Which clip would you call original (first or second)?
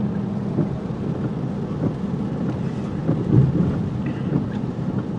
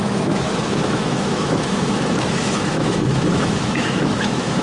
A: first